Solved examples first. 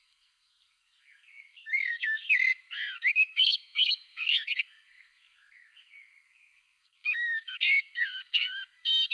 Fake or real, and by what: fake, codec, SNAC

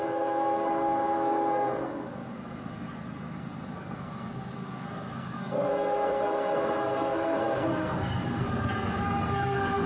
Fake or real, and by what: fake, codec, SNAC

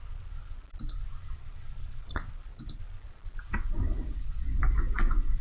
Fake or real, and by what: real